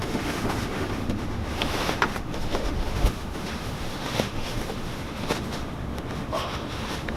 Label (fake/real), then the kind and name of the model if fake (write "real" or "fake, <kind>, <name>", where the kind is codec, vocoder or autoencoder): fake, autoencoder, DAC-VAE